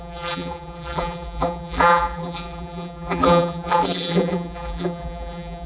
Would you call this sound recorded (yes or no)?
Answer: no